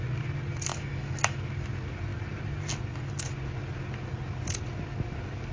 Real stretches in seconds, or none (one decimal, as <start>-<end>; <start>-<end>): 0.0-0.7; 1.4-5.5